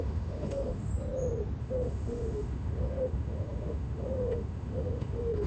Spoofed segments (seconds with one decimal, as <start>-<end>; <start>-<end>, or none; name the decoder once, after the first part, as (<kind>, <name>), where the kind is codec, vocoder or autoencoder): 0.0-0.9 (autoencoder, DAC-VAE); 1.6-5.5